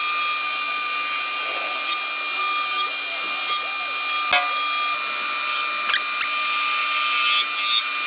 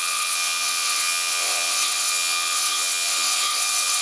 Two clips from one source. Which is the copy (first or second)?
second